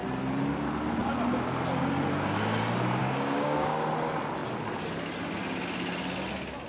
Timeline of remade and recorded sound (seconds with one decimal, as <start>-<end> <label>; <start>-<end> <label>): 0.0-3.0 recorded; 3.0-3.9 remade; 3.9-6.7 recorded